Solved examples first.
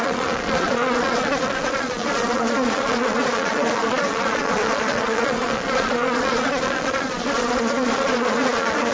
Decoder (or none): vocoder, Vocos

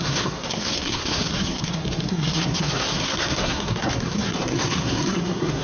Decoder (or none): codec, SNAC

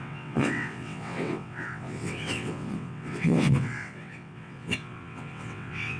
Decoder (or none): vocoder, WaveNeXt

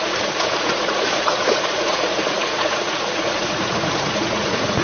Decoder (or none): vocoder, Vocos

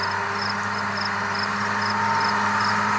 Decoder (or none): none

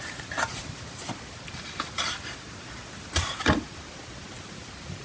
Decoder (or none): none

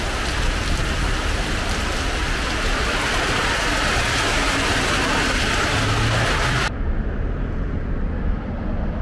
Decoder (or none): none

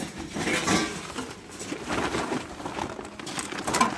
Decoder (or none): none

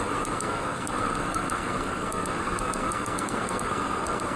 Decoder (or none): codec, SNAC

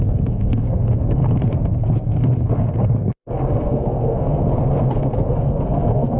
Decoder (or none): codec, SNAC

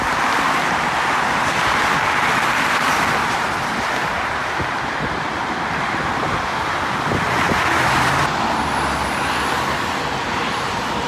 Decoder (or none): none